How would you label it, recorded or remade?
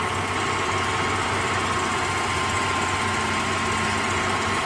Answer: recorded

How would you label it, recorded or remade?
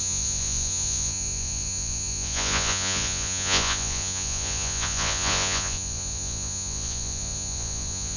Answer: remade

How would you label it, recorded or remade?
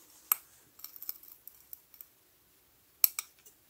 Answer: recorded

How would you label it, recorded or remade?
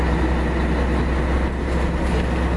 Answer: recorded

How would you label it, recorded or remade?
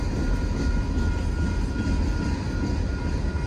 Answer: recorded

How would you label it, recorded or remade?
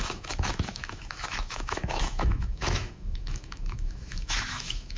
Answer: remade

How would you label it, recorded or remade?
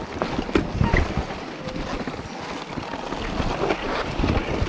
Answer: recorded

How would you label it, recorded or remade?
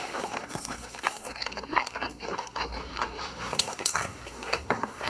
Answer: remade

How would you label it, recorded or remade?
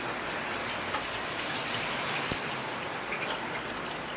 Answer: recorded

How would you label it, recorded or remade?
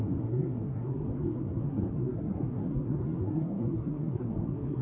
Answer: remade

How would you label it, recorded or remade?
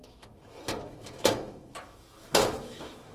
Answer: remade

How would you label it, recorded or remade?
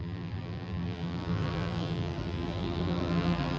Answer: remade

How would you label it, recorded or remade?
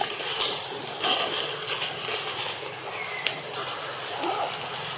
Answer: recorded